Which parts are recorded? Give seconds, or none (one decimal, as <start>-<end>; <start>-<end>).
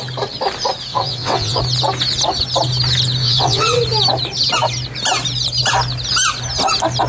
0.0-0.9; 1.6-3.2; 3.8-7.1